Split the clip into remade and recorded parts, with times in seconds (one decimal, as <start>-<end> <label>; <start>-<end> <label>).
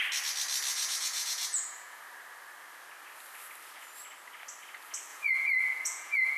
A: 0.0-0.7 recorded; 0.7-2.0 remade; 2.0-5.1 recorded; 5.1-6.4 remade